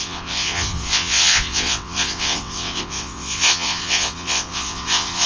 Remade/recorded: remade